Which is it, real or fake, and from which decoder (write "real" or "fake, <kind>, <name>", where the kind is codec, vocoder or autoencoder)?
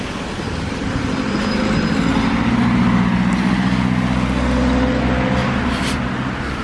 real